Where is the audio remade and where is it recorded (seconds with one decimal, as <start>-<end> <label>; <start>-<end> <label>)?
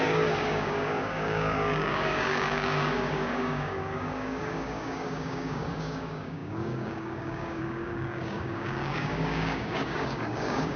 0.0-10.8 remade